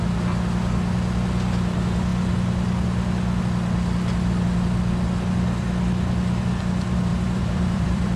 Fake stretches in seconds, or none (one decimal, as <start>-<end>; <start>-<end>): 7.1-8.2